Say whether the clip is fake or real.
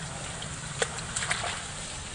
real